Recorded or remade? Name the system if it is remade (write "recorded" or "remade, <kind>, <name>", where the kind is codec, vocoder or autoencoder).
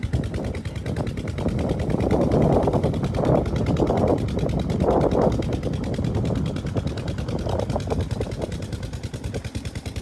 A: recorded